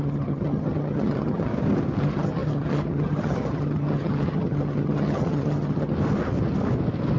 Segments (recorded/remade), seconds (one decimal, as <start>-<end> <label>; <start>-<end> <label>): 0.0-1.5 remade; 1.5-2.0 recorded; 2.0-5.9 remade; 5.9-7.2 recorded